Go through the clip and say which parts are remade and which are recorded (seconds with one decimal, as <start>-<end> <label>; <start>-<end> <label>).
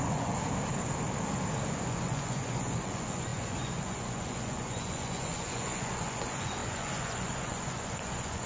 0.0-0.4 remade; 0.4-1.9 recorded; 1.9-8.5 remade